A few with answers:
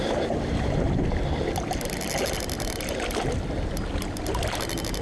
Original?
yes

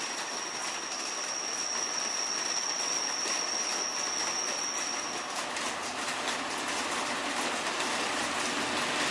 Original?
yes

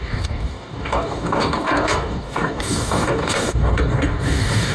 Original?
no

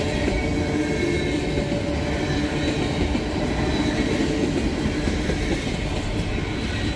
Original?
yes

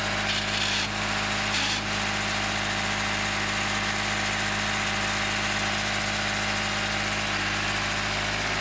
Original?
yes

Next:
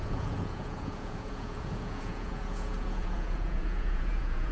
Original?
no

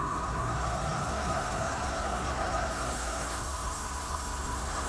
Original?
no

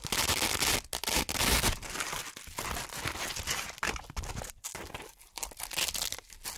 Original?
yes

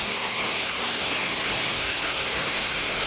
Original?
no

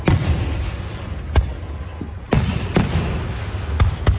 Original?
yes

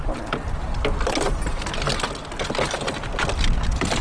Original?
yes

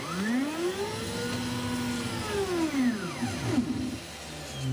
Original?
yes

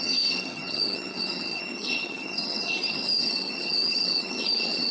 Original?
no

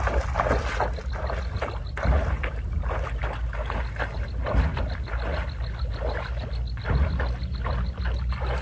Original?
yes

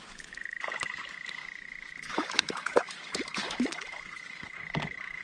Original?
no